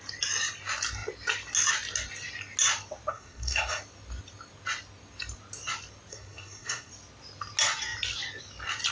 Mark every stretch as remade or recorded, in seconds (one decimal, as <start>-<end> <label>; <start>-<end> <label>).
0.0-3.1 recorded; 3.1-3.8 remade; 3.8-6.1 recorded; 6.1-6.9 remade; 6.9-8.9 recorded